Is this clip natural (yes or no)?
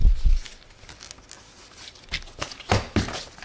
yes